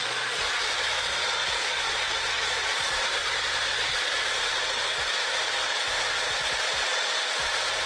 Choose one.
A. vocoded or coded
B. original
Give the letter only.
A